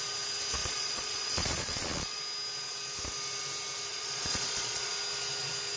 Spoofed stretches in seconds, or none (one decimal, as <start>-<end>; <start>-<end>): 0.6-2.2; 3.9-4.9